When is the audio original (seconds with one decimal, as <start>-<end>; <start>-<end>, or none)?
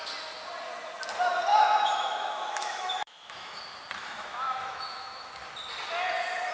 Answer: 0.0-1.5; 3.6-4.0; 5.3-6.5